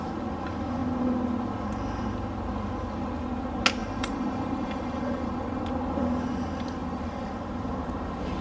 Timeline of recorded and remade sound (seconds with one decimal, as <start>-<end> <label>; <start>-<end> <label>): 0.0-3.8 recorded; 3.8-5.6 remade; 5.6-6.8 recorded; 6.8-7.3 remade; 7.3-8.4 recorded